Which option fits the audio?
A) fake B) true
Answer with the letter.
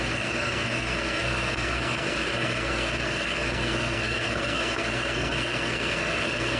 A